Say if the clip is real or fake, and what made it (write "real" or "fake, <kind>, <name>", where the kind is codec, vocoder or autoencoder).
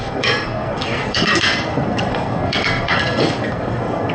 fake, codec, SNAC